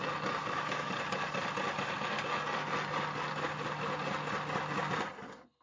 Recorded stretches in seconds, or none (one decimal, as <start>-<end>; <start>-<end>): 0.0-0.4; 0.9-5.6